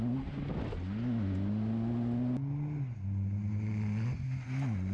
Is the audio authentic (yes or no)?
yes